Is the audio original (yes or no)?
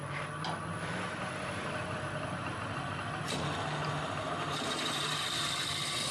yes